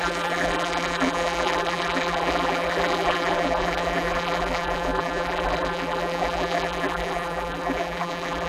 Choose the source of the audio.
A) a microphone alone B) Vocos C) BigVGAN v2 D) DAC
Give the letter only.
C